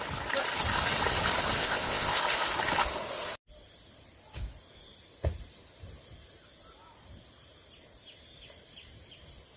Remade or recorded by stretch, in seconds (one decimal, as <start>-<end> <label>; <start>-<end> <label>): 0.0-1.6 recorded; 1.6-2.2 remade; 2.2-9.6 recorded